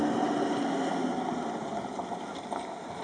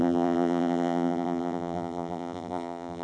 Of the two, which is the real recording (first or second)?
first